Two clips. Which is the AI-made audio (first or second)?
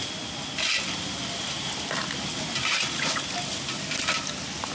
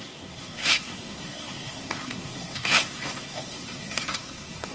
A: second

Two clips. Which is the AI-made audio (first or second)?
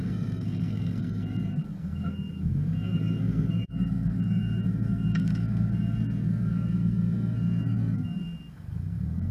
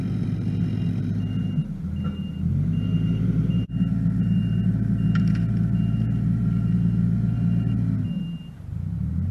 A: first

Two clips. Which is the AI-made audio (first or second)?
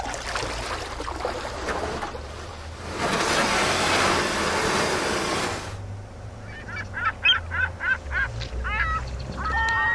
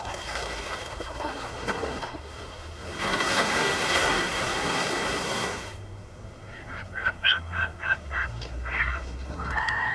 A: second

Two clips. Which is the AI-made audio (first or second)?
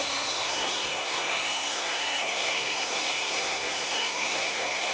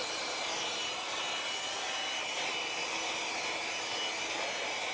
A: first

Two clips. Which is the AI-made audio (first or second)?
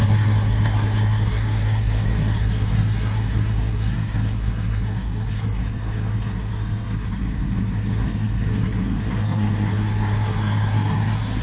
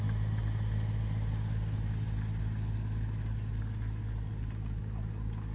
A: first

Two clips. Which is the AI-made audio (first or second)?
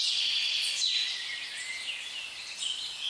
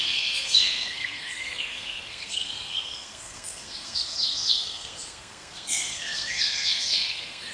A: second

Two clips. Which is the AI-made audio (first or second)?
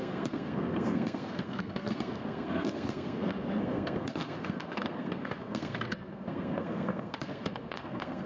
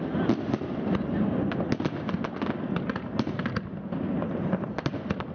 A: first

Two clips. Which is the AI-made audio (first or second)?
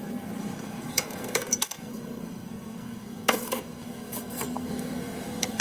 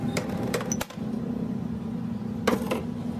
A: first